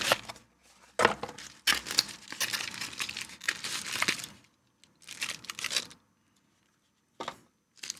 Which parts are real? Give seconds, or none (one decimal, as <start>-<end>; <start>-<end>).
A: 0.0-8.0